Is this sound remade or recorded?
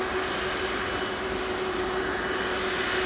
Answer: recorded